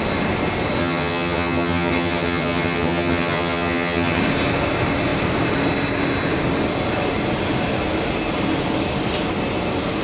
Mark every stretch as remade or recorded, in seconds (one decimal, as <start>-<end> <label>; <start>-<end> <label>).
0.0-0.8 recorded; 0.8-4.2 remade; 4.2-10.0 recorded